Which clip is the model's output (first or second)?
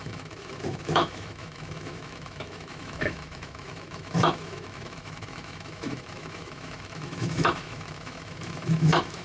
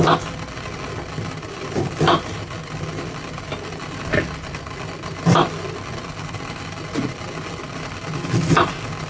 first